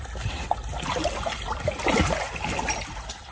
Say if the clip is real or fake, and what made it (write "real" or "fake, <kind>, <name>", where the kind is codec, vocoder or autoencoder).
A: real